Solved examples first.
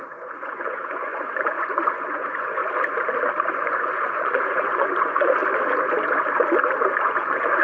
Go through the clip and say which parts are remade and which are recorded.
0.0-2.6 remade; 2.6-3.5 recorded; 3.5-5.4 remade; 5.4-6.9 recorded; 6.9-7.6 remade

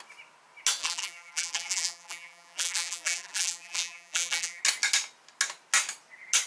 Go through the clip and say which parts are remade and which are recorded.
0.0-0.8 recorded; 0.8-4.6 remade; 4.6-6.5 recorded

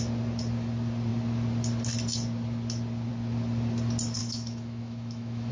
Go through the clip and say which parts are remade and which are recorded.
0.0-4.2 recorded; 4.2-5.5 remade

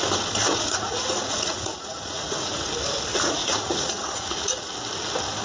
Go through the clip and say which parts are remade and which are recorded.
0.0-0.5 recorded; 0.5-2.7 remade; 2.7-3.1 recorded; 3.1-4.7 remade; 4.7-5.4 recorded

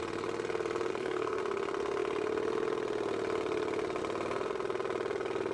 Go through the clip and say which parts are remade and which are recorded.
0.0-0.9 recorded; 0.9-1.4 remade; 1.4-5.5 recorded

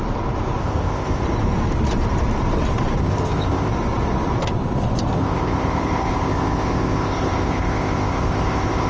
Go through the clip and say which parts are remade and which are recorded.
0.0-0.6 recorded; 0.6-1.2 remade; 1.2-3.0 recorded; 3.0-3.7 remade; 3.7-5.1 recorded; 5.1-8.9 remade

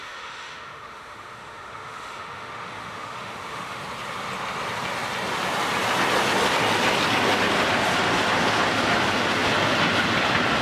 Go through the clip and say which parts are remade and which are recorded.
0.0-3.8 remade; 3.8-10.6 recorded

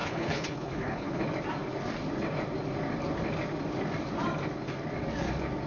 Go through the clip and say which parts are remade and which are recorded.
0.0-1.2 remade; 1.2-5.7 recorded